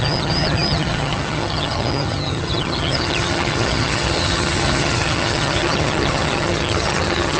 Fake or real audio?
fake